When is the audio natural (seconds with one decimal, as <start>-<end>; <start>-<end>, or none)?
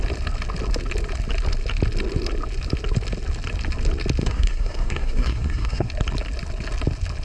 0.0-4.2; 5.9-7.2